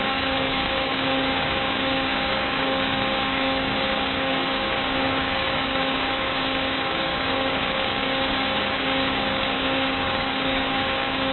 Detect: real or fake fake